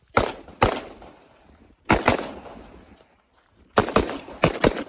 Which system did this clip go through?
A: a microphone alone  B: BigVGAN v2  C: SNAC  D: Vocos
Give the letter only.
A